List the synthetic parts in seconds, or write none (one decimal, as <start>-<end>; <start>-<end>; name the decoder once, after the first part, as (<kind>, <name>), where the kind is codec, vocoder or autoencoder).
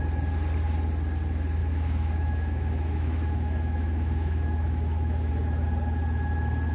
1.6-5.3 (autoencoder, DAC-VAE)